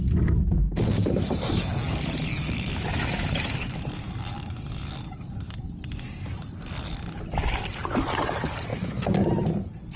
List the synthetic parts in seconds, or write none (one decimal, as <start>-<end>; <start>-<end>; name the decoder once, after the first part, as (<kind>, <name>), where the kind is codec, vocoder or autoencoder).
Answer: 2.3-3.8 (autoencoder, DAC-VAE); 8.7-9.3

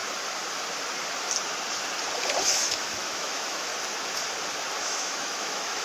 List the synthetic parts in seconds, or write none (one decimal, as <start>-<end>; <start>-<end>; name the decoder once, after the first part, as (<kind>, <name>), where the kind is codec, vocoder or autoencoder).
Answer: 2.4-3.7 (autoencoder, DAC-VAE); 4.8-5.8

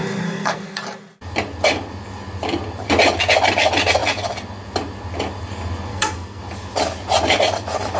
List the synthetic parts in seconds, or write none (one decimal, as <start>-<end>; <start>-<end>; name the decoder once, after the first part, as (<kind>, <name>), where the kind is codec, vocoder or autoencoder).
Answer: 0.0-0.8 (codec, SNAC); 5.9-6.4

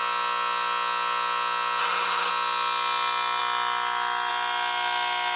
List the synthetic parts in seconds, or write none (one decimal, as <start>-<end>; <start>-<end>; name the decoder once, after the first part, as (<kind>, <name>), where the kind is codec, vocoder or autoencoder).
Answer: 1.8-2.3 (codec, HILCodec)

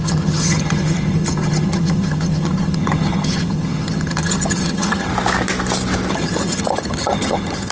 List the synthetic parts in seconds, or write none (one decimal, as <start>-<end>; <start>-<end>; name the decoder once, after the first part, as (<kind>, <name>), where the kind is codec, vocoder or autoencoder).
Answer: 0.0-5.1 (vocoder, HiFi-GAN); 6.1-7.7

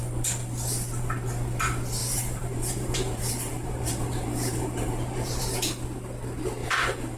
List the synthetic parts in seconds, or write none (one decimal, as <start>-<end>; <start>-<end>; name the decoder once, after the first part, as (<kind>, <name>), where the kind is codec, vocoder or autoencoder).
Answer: 2.0-5.4 (vocoder, BigVGAN v2); 6.6-7.2

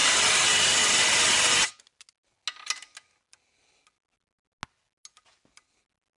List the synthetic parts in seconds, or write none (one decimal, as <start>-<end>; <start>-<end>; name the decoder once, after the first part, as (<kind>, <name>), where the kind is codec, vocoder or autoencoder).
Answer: none

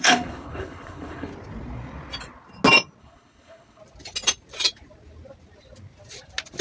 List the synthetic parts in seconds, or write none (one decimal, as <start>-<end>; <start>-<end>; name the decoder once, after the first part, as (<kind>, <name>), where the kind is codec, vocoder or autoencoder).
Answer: 0.0-1.3 (codec, HILCodec); 3.0-3.8